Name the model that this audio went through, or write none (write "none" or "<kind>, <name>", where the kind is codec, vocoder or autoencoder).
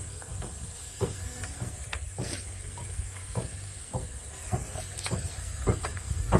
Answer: codec, SNAC